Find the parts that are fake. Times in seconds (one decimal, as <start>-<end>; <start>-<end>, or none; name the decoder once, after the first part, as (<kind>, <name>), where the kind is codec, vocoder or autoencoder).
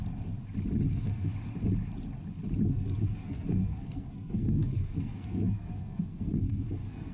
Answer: 0.9-1.3 (codec, SNAC); 2.7-7.1